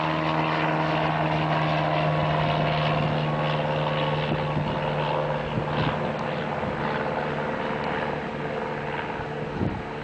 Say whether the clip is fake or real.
real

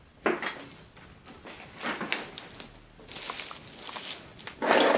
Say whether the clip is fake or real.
real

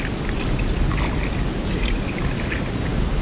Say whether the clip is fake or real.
real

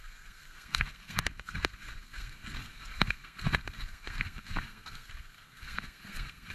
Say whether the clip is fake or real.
fake